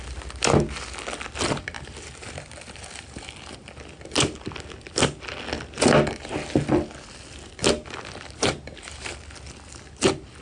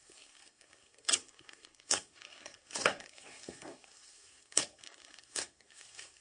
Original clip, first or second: first